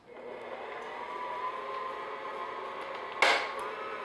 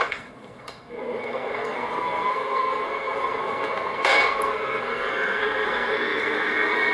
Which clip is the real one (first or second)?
first